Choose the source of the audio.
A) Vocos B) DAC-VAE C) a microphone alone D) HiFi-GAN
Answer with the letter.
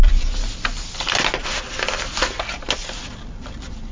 C